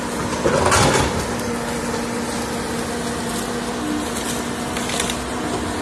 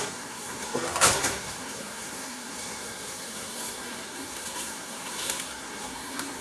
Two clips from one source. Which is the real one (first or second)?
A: first